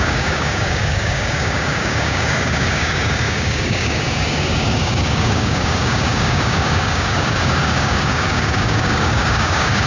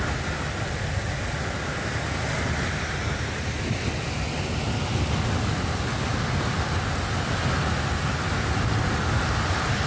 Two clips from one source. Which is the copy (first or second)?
first